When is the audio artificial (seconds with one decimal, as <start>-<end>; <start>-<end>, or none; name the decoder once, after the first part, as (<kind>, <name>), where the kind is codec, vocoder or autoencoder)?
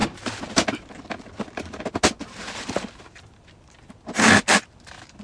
none